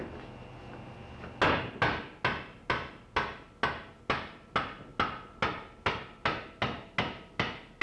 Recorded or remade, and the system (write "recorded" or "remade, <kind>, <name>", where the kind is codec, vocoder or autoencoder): recorded